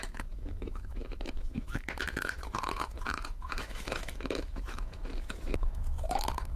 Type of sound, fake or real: fake